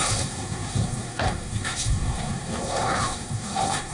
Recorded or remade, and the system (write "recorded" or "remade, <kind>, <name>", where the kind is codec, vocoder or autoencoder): remade, codec, SNAC